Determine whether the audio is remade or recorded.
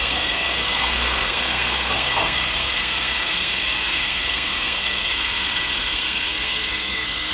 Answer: remade